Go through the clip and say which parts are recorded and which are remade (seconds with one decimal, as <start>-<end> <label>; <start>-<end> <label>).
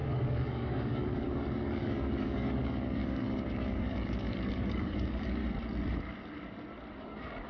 0.0-5.4 remade; 5.4-7.0 recorded; 7.0-7.5 remade